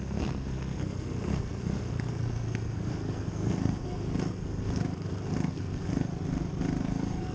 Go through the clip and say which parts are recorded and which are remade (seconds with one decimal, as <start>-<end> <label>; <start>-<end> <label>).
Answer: 0.0-6.1 remade; 6.1-6.8 recorded; 6.8-7.3 remade